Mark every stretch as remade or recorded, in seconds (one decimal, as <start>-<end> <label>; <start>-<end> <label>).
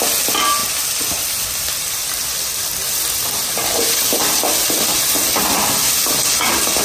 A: 0.0-6.8 recorded